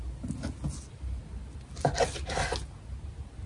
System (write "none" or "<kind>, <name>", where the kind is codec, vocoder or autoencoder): none